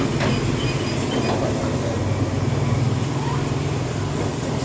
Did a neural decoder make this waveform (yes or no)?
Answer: no